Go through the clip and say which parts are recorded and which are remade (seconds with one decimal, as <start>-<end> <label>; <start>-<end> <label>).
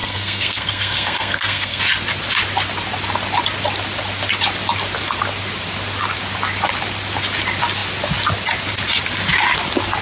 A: 0.0-1.8 remade; 1.8-10.0 recorded